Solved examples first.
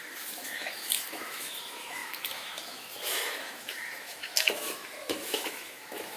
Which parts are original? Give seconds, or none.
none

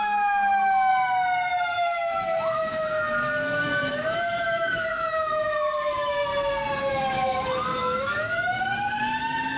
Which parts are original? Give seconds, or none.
0.9-1.6; 6.3-6.9

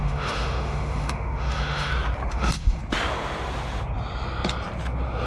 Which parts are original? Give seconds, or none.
1.9-2.3; 2.8-5.3

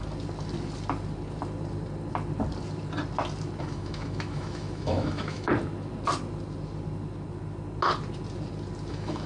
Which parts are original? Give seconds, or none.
0.0-3.6; 5.5-8.9

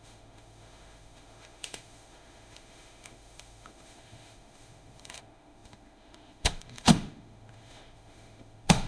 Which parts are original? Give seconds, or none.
none

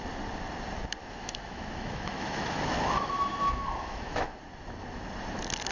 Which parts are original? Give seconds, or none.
0.0-1.0; 4.4-5.7